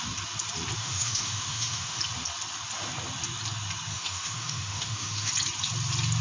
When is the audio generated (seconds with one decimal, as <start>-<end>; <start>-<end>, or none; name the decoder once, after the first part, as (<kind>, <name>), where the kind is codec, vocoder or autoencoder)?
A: 0.8-2.0 (autoencoder, DAC-VAE); 3.9-5.3